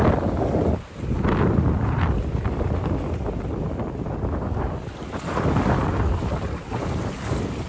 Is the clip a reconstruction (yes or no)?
no